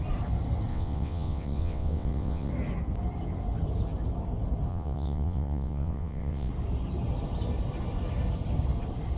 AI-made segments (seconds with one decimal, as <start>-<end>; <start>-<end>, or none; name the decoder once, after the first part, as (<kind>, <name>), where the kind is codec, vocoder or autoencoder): 0.7-2.5 (vocoder, WaveNeXt); 4.7-6.5